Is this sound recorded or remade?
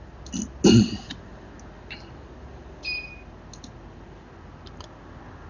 recorded